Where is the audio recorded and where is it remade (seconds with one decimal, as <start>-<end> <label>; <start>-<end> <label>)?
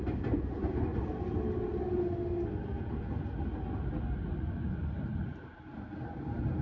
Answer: 0.0-6.6 recorded